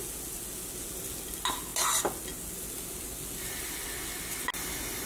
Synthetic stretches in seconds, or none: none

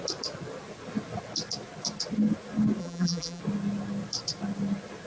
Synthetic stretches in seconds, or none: 2.8-3.4

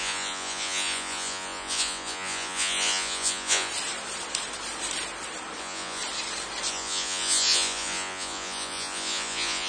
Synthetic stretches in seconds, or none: 0.0-3.7; 5.6-6.0; 6.7-9.7

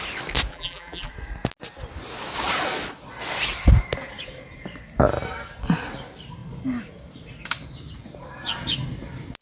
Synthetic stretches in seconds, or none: 0.5-1.1

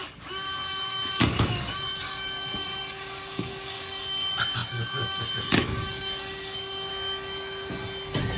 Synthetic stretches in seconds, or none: 0.0-6.9

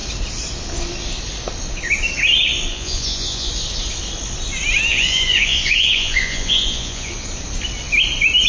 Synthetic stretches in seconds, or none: 2.7-3.5; 4.9-7.1

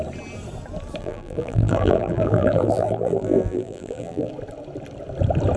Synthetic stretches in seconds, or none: 1.0-4.3